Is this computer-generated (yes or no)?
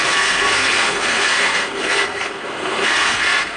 yes